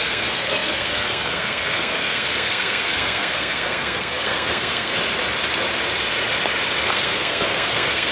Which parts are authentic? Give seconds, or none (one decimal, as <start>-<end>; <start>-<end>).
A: 4.9-6.9